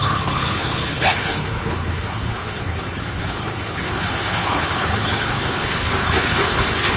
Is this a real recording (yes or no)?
no